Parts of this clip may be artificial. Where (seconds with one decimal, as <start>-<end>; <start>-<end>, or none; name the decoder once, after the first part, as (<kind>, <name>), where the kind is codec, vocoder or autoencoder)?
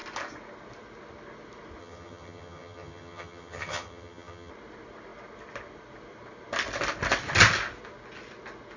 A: 1.8-4.5 (vocoder, HiFi-GAN)